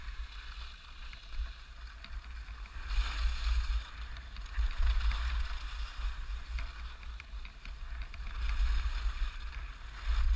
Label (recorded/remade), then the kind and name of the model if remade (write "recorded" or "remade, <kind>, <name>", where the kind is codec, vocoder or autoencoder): recorded